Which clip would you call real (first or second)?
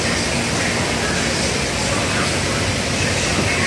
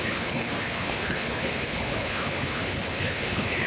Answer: first